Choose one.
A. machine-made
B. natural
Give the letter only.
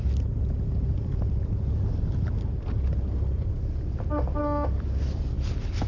B